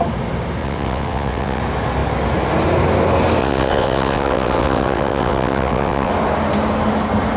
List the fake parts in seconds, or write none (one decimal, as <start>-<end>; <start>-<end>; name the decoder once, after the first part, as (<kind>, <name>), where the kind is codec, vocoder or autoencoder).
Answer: 0.6-1.6 (vocoder, WaveNeXt); 3.4-6.1

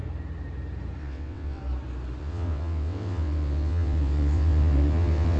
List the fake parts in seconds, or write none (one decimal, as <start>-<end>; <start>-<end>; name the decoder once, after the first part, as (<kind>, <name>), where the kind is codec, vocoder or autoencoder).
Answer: 1.0-1.6 (vocoder, WaveNeXt); 2.2-5.4

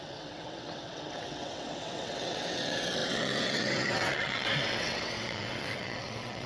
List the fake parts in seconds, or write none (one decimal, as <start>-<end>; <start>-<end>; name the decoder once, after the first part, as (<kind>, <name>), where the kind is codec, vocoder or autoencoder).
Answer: 0.0-6.5 (vocoder, WaveNeXt)

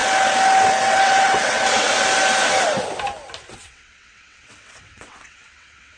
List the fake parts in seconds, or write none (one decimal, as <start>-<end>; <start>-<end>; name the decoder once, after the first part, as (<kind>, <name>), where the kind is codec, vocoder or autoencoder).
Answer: 0.8-1.9 (vocoder, WaveNeXt); 3.5-6.0

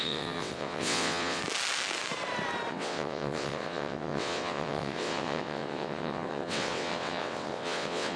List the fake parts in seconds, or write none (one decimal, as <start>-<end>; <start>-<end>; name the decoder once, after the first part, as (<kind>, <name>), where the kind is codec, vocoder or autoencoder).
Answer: 0.0-1.4 (vocoder, WaveNeXt); 2.7-8.2